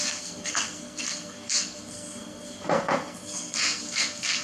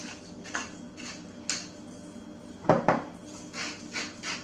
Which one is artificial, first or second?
first